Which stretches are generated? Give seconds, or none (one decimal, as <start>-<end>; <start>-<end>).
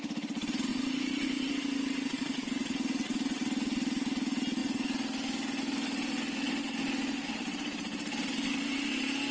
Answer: 0.7-1.5